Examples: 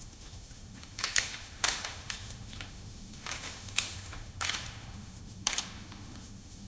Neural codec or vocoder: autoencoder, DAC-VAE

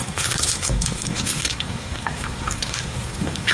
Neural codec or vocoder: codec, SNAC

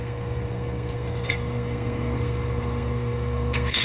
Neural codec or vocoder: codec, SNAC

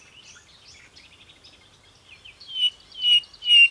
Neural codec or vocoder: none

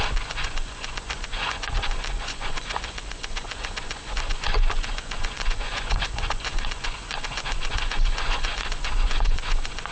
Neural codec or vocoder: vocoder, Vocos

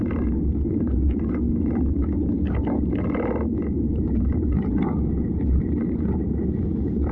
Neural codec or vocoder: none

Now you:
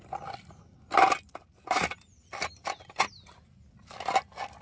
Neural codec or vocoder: none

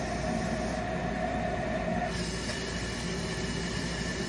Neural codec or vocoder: none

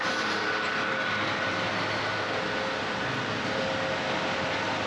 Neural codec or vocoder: none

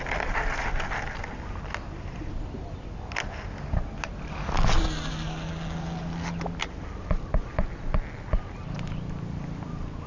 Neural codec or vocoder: none